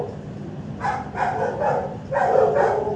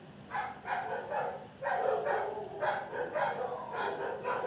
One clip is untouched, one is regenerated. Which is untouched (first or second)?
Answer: second